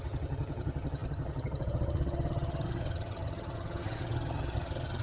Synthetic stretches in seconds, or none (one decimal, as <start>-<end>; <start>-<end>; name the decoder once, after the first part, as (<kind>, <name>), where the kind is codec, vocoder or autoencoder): 0.0-5.0 (vocoder, HiFi-GAN)